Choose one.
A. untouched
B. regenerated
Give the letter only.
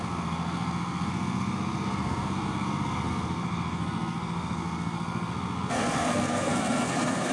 B